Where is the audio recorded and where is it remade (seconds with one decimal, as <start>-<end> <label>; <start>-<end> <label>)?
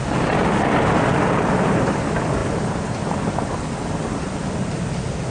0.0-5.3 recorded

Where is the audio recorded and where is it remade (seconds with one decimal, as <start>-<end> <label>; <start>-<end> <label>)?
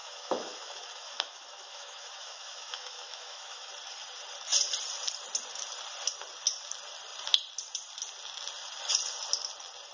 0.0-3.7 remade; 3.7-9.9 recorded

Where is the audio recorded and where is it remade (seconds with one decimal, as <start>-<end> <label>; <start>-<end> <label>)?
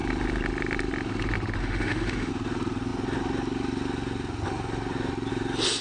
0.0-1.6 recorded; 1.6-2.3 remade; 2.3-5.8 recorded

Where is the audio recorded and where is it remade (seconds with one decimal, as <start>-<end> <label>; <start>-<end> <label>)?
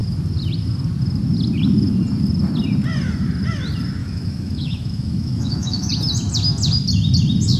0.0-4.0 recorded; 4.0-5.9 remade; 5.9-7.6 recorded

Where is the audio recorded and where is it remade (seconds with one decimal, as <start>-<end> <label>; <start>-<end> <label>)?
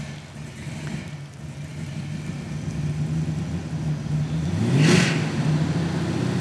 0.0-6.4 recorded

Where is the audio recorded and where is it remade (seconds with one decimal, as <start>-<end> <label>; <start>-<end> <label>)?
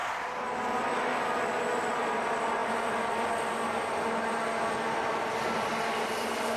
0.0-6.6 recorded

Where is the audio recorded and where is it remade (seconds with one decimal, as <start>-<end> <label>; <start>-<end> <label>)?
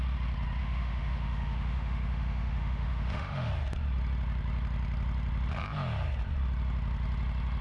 0.0-0.6 recorded; 0.6-3.5 remade; 3.5-7.6 recorded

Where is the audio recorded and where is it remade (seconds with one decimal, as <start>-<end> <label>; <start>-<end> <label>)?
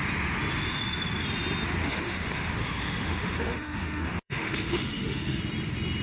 0.0-1.8 recorded; 1.8-5.4 remade; 5.4-6.0 recorded